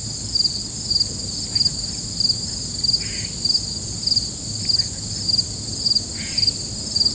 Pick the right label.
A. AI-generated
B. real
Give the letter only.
B